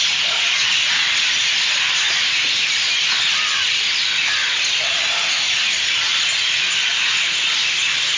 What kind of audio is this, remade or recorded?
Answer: recorded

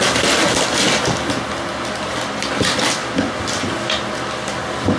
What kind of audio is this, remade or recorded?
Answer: recorded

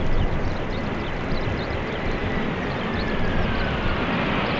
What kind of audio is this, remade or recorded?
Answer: remade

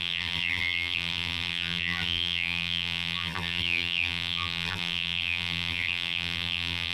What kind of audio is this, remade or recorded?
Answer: remade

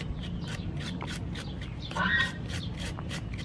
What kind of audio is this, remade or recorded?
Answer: remade